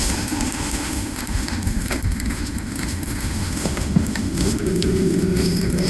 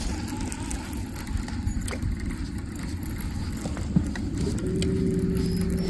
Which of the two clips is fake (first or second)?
first